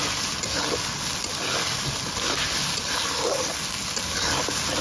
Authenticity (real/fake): real